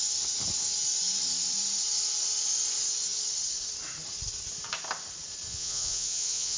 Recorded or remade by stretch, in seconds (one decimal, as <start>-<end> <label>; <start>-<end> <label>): 0.0-5.5 recorded; 5.5-6.6 remade